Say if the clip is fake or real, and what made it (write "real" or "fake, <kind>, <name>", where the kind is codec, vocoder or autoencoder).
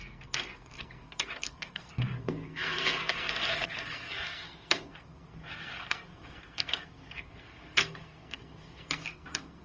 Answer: fake, codec, SNAC